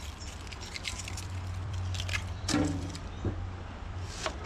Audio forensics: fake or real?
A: fake